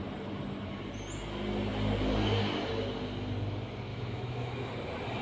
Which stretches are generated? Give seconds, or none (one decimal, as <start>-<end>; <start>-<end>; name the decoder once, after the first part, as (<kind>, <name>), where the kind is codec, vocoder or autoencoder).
3.9-4.7 (autoencoder, DAC-VAE)